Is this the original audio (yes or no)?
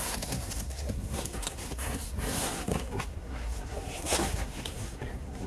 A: no